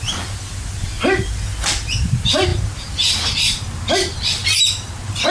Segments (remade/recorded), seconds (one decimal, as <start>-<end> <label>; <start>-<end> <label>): 0.0-5.3 recorded